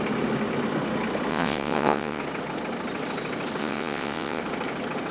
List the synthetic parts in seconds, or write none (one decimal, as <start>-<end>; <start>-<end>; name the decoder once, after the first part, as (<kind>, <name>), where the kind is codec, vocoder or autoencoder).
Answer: 1.3-2.2 (vocoder, WaveNeXt); 3.6-4.4